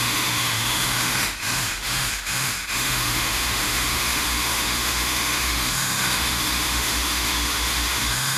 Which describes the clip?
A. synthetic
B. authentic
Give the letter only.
A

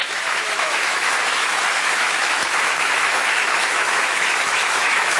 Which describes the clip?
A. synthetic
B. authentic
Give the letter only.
A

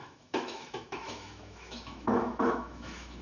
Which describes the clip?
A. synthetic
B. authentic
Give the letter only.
A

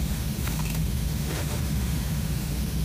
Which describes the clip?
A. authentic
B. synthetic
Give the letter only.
B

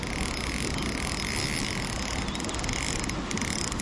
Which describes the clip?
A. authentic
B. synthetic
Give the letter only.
A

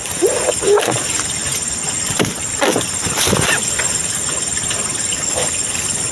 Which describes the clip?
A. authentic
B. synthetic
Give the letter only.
A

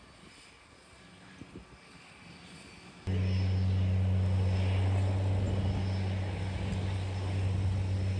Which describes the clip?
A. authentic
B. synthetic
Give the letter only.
A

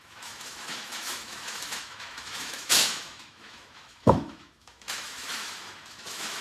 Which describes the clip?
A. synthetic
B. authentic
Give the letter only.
A